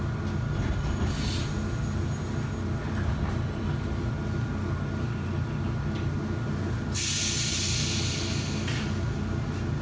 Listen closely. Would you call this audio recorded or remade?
recorded